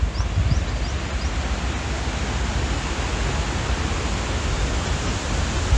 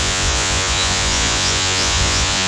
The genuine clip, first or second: first